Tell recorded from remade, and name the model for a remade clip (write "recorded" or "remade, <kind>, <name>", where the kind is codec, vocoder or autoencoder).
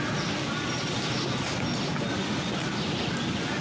recorded